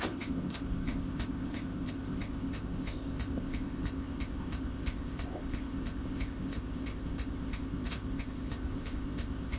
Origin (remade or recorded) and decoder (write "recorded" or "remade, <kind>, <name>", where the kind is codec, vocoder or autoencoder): remade, codec, ZipCodec